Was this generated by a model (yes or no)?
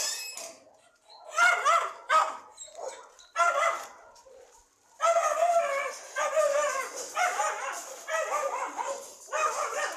no